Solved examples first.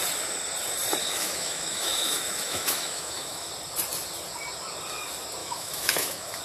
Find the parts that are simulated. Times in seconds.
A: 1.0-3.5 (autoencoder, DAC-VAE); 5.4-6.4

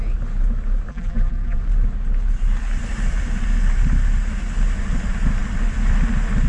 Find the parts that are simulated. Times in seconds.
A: 0.9-1.6 (vocoder, BigVGAN v2)

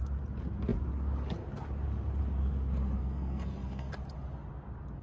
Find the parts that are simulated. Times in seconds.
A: 3.0-3.9 (codec, SNAC)

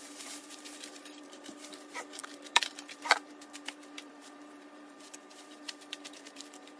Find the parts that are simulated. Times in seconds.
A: 0.0-6.8 (vocoder, BigVGAN v2)